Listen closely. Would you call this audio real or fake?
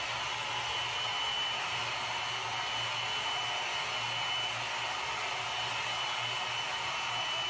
real